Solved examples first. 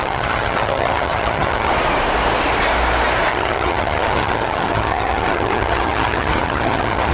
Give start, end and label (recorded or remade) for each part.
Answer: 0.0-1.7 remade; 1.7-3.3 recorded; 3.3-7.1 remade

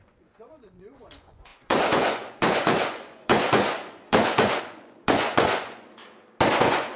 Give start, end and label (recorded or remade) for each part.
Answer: 0.0-6.0 remade; 6.0-6.6 recorded; 6.6-7.0 remade

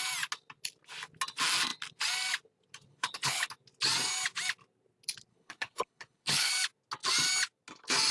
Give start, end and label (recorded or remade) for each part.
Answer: 0.0-2.9 recorded; 2.9-3.5 remade; 3.5-5.3 recorded; 5.3-6.5 remade; 6.5-8.1 recorded

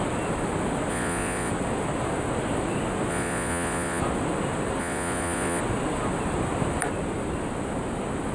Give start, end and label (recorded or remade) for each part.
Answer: 0.0-0.9 recorded; 0.9-1.5 remade; 1.5-3.1 recorded; 3.1-4.0 remade; 4.0-4.8 recorded; 4.8-5.6 remade; 5.6-8.3 recorded